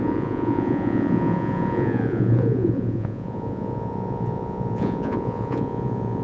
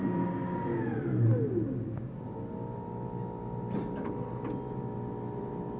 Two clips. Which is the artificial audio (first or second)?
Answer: first